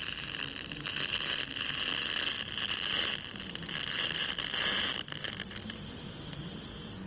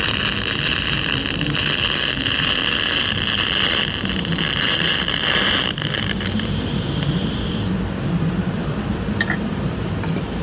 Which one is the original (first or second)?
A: first